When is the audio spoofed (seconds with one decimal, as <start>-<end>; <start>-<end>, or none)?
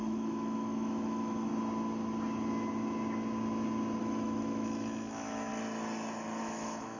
0.0-1.5; 4.0-5.5; 6.4-7.0